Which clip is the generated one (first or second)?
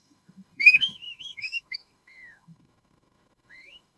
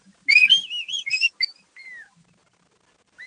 first